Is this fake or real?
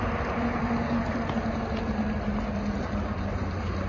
real